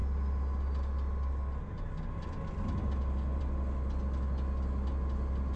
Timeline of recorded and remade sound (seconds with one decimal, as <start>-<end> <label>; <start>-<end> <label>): 0.0-5.6 recorded